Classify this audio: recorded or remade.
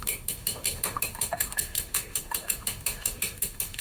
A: remade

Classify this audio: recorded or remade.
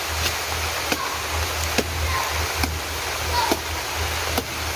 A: recorded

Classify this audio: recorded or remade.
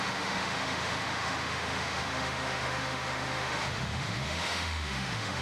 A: remade